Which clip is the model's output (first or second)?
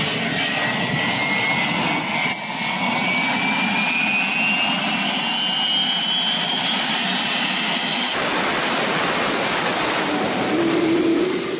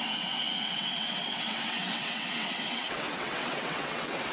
second